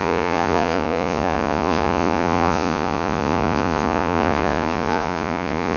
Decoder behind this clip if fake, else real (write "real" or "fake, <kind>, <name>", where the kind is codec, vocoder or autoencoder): fake, vocoder, Vocos